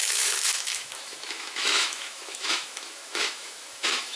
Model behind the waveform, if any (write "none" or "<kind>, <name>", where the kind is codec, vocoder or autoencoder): autoencoder, DAC-VAE